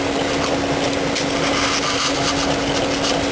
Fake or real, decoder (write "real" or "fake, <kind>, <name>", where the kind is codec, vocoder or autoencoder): real